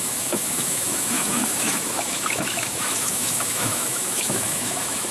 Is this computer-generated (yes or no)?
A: yes